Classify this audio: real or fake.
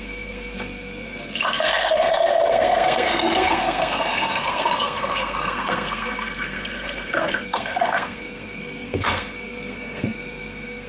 fake